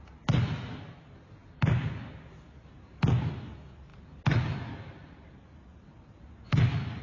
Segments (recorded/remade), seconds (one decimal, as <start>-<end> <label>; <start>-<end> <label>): 0.0-7.0 recorded